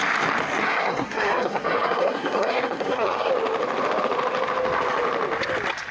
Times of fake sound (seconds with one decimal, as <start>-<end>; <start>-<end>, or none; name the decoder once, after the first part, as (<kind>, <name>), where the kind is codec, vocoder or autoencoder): 0.6-3.3 (codec, SNAC)